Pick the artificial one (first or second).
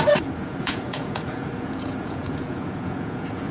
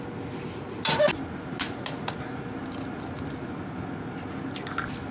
first